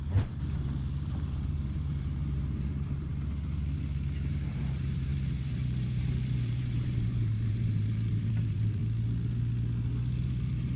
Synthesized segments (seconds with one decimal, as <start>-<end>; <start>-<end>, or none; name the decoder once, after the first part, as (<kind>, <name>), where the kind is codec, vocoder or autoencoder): 0.0-3.1 (vocoder, BigVGAN v2); 4.3-8.8; 10.2-10.8